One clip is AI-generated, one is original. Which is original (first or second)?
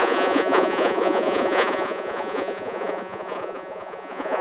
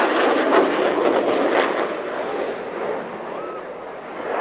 second